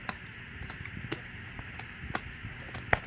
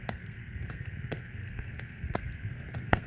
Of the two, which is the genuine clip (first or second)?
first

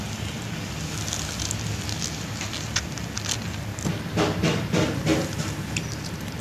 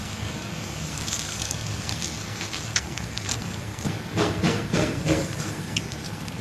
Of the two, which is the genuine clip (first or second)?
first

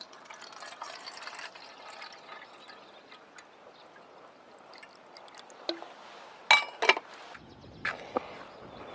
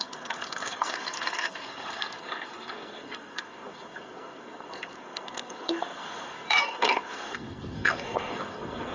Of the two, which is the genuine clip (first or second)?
first